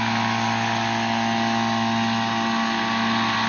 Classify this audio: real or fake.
real